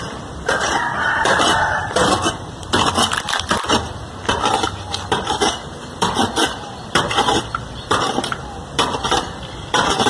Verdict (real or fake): fake